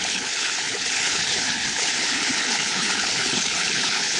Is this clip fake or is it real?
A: fake